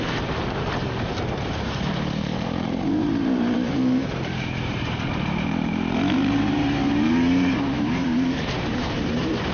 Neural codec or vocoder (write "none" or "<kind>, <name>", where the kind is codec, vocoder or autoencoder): vocoder, BigVGAN v2